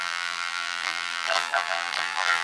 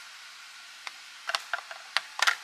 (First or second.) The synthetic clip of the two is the first